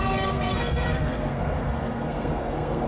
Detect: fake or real fake